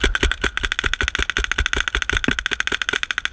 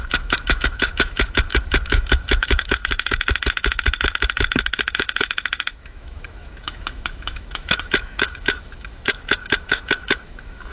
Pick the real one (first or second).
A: first